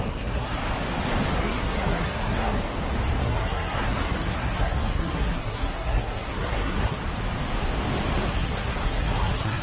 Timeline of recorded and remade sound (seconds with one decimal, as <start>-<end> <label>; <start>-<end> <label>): 0.0-0.6 remade; 0.6-1.4 recorded; 1.4-2.6 remade; 2.6-3.2 recorded; 3.2-7.0 remade; 7.0-8.3 recorded; 8.3-9.6 remade